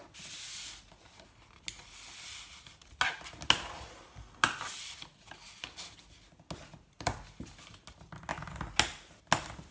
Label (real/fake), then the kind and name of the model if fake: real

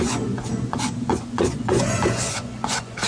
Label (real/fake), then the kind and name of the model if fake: fake, vocoder, Vocos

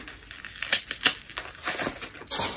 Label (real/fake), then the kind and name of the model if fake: real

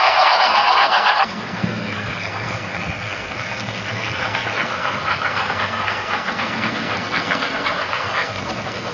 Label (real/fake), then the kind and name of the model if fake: fake, codec, SNAC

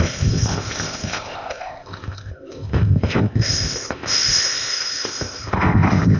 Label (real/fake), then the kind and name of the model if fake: fake, codec, ZipCodec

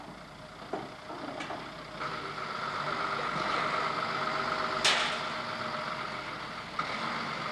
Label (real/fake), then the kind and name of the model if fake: real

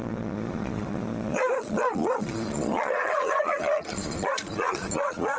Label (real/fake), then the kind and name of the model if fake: fake, vocoder, Vocos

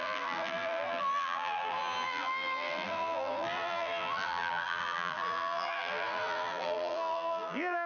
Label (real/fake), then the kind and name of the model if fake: fake, vocoder, BigVGAN v2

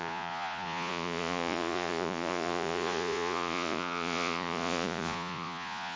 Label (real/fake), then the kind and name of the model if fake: fake, vocoder, Vocos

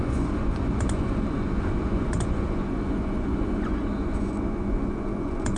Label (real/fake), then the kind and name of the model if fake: fake, vocoder, Vocos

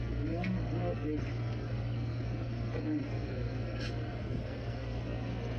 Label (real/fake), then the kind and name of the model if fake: fake, codec, SNAC